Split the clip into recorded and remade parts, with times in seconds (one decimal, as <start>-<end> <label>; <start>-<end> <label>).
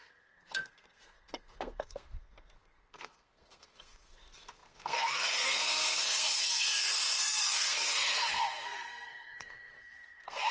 0.0-10.5 remade